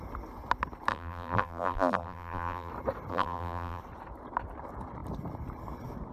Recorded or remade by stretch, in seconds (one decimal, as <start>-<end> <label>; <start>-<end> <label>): 0.0-0.9 recorded; 0.9-2.7 remade; 2.7-3.1 recorded; 3.1-3.8 remade; 3.8-6.1 recorded